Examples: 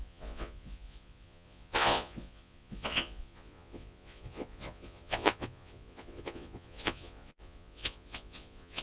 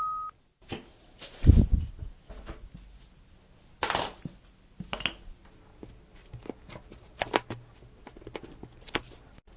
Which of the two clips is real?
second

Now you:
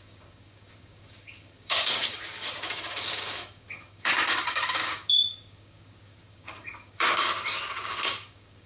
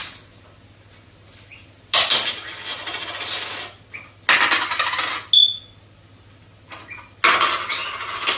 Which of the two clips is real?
second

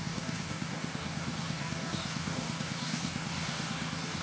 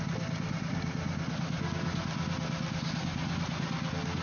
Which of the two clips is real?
second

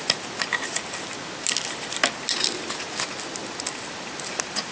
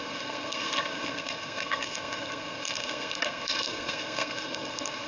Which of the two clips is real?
first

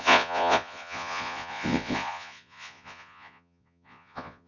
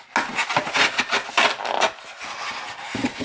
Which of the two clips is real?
second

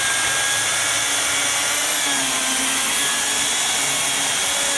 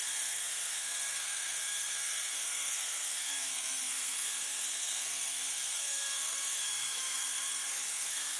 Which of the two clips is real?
first